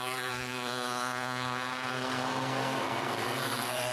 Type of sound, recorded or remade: remade